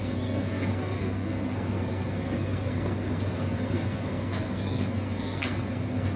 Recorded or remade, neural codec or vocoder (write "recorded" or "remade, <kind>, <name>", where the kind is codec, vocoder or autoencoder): remade, codec, SNAC